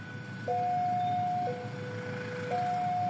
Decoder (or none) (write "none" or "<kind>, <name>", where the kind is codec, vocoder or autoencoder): none